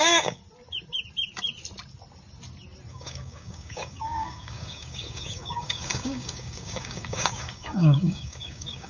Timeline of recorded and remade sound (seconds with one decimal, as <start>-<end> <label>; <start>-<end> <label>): 0.0-0.4 remade; 0.4-2.9 recorded; 2.9-8.9 remade